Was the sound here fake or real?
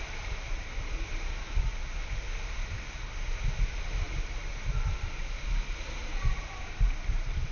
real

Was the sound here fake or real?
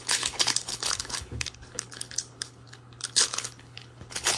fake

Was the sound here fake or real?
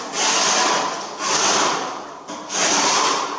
real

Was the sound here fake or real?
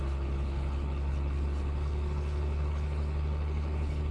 fake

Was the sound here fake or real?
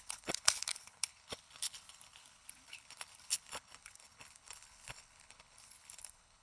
fake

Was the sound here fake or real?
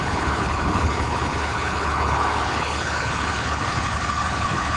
fake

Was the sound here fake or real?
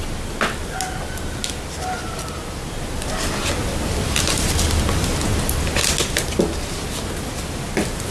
real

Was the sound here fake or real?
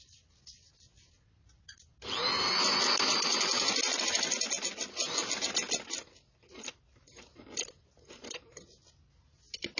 real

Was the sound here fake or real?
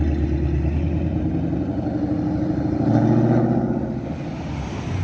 real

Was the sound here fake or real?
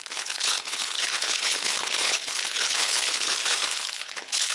fake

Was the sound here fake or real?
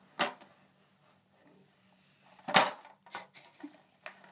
real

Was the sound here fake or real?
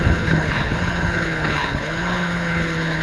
fake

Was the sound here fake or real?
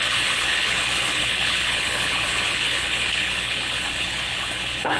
fake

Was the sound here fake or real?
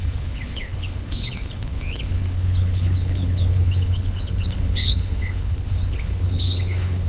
fake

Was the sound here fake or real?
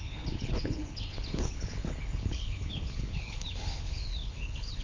fake